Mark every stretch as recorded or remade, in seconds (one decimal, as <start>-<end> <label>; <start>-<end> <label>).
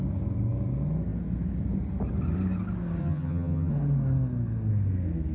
0.0-3.0 recorded; 3.0-3.7 remade; 3.7-5.3 recorded